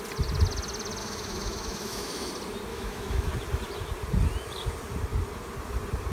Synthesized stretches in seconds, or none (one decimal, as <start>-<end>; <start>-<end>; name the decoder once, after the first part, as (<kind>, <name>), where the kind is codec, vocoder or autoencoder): 1.0-2.3 (autoencoder, DAC-VAE); 2.7-3.3